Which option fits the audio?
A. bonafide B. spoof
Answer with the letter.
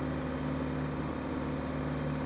A